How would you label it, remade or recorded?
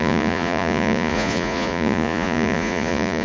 remade